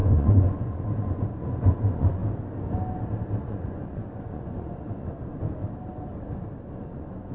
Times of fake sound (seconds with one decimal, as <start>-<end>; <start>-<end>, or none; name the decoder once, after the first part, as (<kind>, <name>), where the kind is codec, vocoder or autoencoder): 0.0-2.2 (vocoder, Vocos); 3.4-5.3; 6.8-7.3